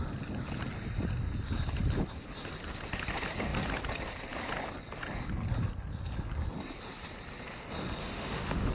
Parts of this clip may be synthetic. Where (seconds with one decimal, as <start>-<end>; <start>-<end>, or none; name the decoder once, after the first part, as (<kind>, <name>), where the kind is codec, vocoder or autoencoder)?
8.0-8.7 (autoencoder, DAC-VAE)